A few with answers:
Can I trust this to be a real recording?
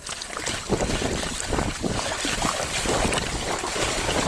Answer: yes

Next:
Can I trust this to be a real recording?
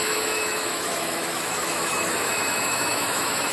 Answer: no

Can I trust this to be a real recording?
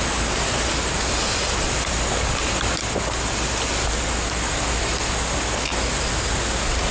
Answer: yes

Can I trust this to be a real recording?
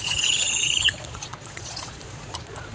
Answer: no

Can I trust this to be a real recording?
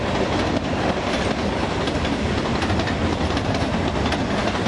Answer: no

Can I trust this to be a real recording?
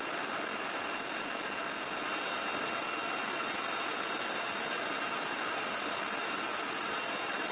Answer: yes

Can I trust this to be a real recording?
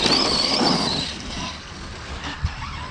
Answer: yes